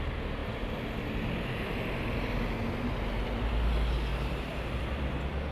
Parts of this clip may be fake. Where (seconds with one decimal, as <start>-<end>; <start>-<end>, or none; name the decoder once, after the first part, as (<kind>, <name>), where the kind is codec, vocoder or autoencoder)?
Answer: 4.1-4.8 (vocoder, BigVGAN v2)